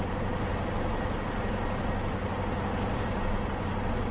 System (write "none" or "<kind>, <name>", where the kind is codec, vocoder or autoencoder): none